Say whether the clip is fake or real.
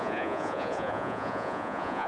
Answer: fake